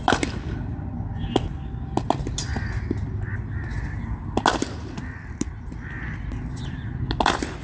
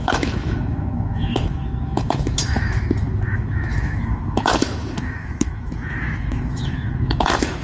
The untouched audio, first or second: first